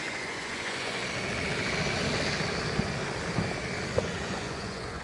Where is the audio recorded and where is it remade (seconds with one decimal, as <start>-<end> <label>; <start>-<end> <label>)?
0.0-1.0 remade; 1.0-4.0 recorded; 4.0-5.0 remade